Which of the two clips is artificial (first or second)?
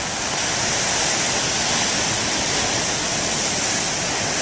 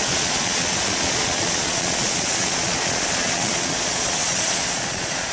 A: second